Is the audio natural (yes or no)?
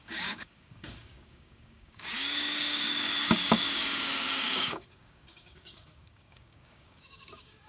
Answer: no